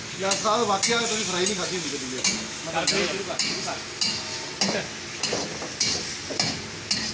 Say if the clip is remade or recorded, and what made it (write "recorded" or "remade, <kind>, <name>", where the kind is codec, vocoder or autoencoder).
recorded